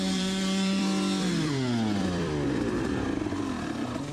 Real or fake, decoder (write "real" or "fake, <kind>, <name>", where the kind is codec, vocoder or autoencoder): fake, vocoder, BigVGAN v2